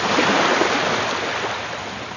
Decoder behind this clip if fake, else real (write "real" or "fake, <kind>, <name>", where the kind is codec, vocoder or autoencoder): real